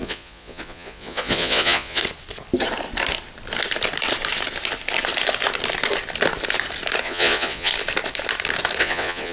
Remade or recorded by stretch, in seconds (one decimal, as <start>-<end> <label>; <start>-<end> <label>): 0.0-2.0 remade; 2.0-7.0 recorded; 7.0-7.7 remade; 7.7-8.8 recorded; 8.8-9.3 remade